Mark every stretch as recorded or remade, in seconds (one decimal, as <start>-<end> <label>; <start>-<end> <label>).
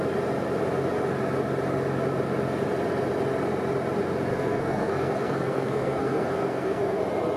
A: 0.0-4.3 recorded; 4.3-7.0 remade; 7.0-7.4 recorded